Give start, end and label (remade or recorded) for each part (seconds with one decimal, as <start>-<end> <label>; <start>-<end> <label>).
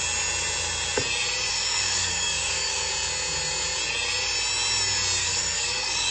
0.0-1.5 recorded; 1.5-2.9 remade; 2.9-5.2 recorded; 5.2-6.1 remade